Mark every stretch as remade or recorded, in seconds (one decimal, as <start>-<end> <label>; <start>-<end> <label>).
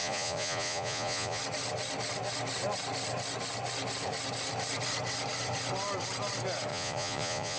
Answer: 0.0-1.4 remade; 1.4-6.7 recorded; 6.7-7.6 remade